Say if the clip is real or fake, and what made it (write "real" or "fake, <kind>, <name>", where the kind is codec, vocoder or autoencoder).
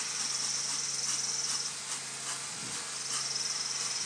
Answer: real